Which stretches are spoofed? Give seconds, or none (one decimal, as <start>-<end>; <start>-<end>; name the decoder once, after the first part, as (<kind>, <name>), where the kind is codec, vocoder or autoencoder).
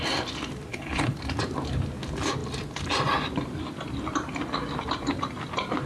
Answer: 0.7-1.2 (codec, HILCodec)